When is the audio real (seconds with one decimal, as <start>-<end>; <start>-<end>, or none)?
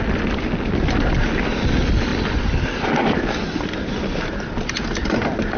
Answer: 0.0-5.6